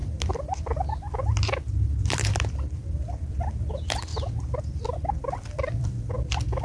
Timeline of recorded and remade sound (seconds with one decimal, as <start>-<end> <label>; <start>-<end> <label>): 0.0-4.1 remade; 4.1-4.6 recorded; 4.6-6.6 remade